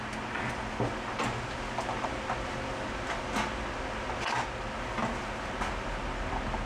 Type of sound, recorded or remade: recorded